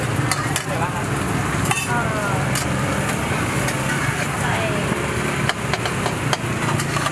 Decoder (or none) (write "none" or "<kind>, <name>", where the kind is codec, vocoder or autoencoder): none